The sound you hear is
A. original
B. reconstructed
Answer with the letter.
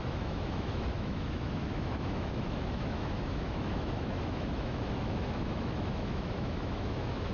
B